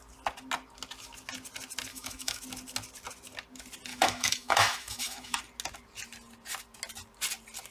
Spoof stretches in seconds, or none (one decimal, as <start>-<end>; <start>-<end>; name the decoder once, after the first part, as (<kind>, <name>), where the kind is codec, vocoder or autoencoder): 1.9-2.4 (autoencoder, DAC-VAE); 3.9-5.4